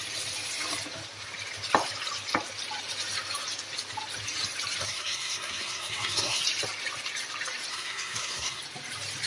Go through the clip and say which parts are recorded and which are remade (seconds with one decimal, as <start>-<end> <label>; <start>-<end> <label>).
0.0-4.8 recorded; 4.8-6.4 remade; 6.4-7.7 recorded; 7.7-8.6 remade; 8.6-9.3 recorded